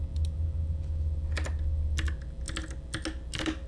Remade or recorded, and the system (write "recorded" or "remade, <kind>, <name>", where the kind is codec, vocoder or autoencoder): recorded